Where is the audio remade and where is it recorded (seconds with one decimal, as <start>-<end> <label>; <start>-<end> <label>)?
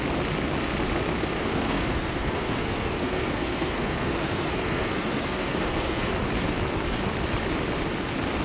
0.0-1.2 recorded; 1.2-6.1 remade; 6.1-8.4 recorded